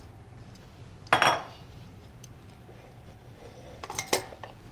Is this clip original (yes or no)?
yes